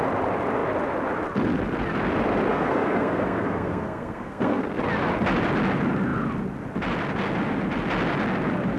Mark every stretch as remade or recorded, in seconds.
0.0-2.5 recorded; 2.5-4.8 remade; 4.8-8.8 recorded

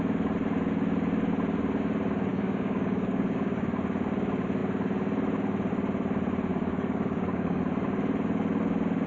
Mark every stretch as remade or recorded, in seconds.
0.0-2.3 recorded; 2.3-3.7 remade; 3.7-6.5 recorded; 6.5-7.6 remade; 7.6-9.1 recorded

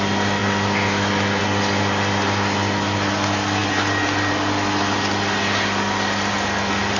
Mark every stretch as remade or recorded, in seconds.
0.0-7.0 recorded

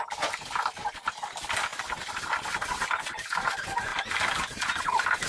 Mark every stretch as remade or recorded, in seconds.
0.0-5.3 recorded